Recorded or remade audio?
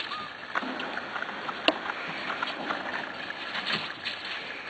recorded